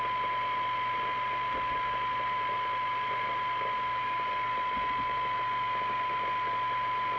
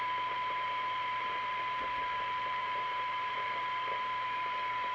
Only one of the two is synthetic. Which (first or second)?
second